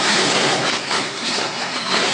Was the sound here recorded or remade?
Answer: remade